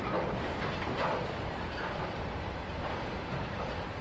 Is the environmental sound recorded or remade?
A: recorded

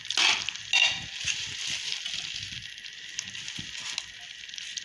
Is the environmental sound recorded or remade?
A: recorded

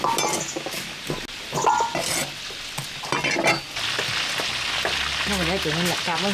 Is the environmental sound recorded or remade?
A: recorded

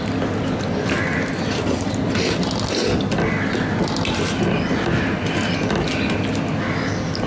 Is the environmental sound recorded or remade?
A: recorded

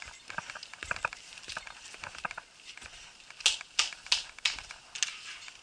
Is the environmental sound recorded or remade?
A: recorded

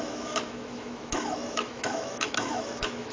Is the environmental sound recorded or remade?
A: remade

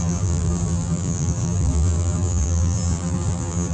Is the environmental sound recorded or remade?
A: remade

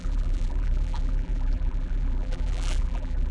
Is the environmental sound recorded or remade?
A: remade